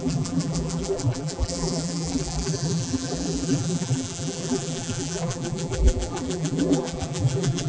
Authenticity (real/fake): fake